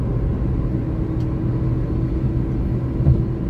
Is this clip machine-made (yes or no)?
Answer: no